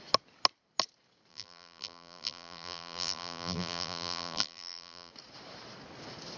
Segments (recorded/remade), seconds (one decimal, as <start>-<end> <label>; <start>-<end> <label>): 0.0-1.3 recorded; 1.3-5.1 remade; 5.1-6.4 recorded